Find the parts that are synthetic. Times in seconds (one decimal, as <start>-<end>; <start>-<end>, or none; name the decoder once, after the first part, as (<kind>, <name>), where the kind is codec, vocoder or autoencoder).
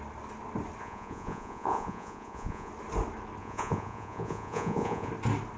0.8-2.7 (vocoder, Vocos); 3.4-5.1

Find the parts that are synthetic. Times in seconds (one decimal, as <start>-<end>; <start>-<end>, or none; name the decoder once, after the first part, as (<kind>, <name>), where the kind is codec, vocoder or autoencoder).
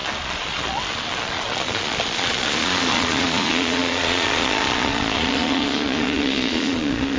0.0-7.2 (vocoder, Vocos)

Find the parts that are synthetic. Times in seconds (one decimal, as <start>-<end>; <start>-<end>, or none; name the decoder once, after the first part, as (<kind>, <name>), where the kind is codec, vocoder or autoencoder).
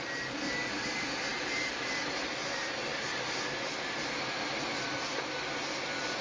none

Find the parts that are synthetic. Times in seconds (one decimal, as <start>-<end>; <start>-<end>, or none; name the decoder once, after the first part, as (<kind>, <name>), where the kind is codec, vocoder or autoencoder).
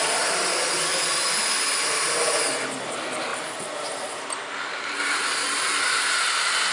none